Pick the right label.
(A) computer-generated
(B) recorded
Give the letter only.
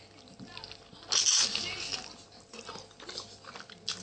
B